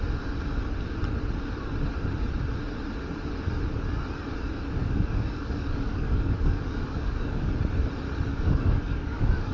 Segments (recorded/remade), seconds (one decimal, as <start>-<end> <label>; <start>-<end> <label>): 0.0-4.8 recorded; 4.8-7.5 remade; 7.5-8.3 recorded; 8.3-9.5 remade